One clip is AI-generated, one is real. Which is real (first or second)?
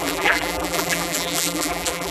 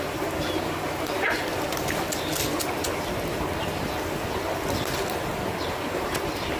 second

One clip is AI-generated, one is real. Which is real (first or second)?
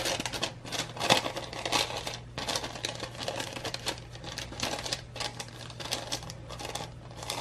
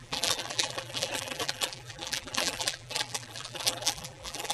first